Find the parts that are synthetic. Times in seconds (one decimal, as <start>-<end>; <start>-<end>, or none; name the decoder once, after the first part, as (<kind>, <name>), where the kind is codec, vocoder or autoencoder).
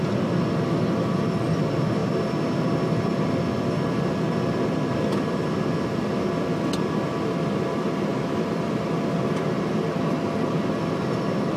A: 8.1-10.0 (vocoder, BigVGAN v2)